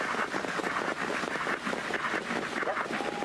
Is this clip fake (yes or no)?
no